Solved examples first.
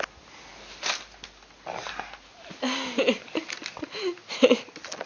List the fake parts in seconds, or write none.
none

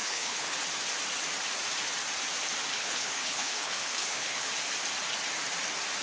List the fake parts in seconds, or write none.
0.0-0.6; 2.7-4.5